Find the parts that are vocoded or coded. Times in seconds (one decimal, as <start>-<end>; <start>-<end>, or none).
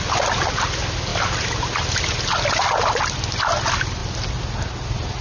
none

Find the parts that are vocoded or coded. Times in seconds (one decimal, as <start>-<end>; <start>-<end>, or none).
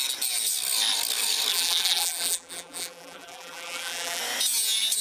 1.5-4.2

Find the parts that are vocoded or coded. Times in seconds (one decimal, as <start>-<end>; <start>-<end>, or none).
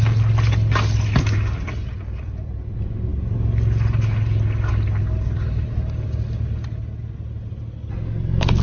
none